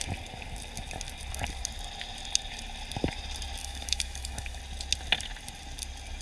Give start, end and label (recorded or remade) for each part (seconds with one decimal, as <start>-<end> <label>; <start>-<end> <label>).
0.0-3.6 recorded; 3.6-4.6 remade; 4.6-6.2 recorded